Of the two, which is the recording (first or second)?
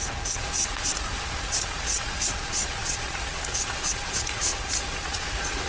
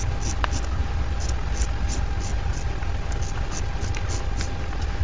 second